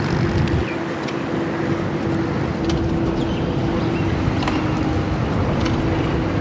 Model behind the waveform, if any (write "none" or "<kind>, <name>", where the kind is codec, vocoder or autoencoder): none